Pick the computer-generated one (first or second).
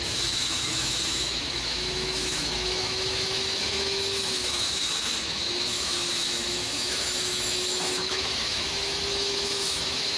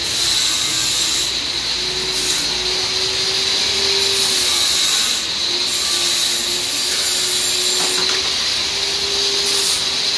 first